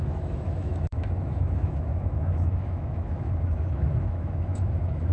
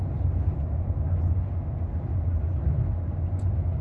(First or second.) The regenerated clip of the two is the first